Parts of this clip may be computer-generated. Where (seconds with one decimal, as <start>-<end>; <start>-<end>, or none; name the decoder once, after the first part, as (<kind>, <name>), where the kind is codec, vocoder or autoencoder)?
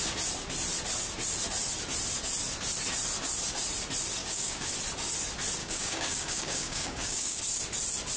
4.2-4.7 (codec, DAC); 5.6-7.4